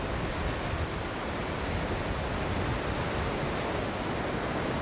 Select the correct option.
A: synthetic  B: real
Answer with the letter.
B